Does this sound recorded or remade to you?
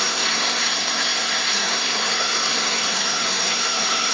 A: remade